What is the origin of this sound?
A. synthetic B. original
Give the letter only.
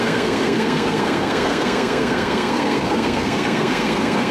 A